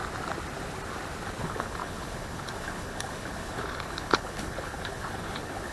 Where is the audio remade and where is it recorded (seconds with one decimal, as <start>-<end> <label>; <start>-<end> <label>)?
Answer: 0.0-1.4 recorded; 1.4-5.7 remade